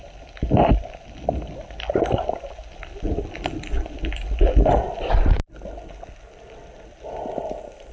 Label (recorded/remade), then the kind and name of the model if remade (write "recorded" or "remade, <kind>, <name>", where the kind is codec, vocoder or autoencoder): recorded